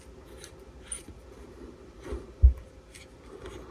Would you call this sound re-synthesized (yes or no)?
no